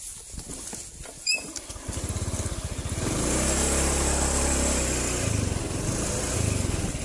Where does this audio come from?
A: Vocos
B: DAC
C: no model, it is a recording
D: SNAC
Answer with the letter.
C